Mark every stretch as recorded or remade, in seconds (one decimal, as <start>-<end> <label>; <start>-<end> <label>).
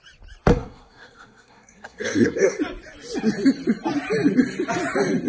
0.0-0.5 recorded; 0.5-2.6 remade; 2.6-5.3 recorded